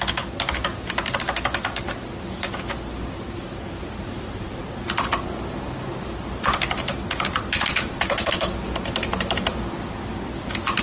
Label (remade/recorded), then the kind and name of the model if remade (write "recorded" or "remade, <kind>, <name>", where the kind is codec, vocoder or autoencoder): recorded